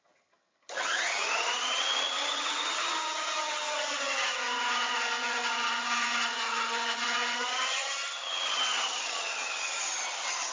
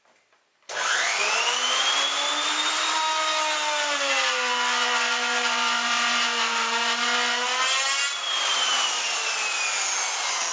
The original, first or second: second